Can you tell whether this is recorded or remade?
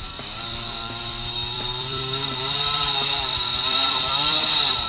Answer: remade